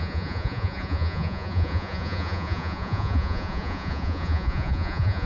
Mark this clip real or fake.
fake